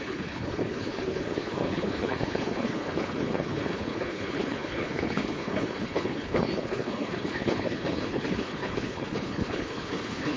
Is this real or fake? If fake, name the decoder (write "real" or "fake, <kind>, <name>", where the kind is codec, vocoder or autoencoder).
fake, codec, HILCodec